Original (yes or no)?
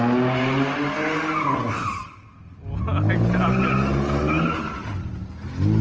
yes